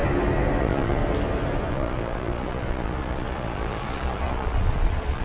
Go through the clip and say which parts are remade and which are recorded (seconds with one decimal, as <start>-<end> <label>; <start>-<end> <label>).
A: 0.0-0.6 recorded; 0.6-1.0 remade; 1.0-1.7 recorded; 1.7-5.2 remade